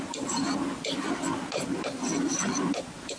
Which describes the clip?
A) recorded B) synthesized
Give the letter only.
A